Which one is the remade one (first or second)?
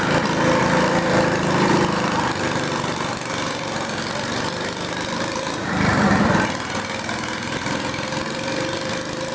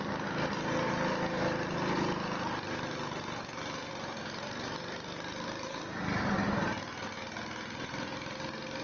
first